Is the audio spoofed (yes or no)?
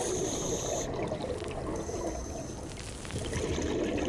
no